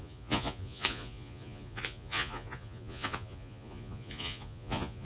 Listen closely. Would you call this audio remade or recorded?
remade